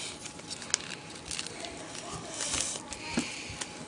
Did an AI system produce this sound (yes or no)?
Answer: no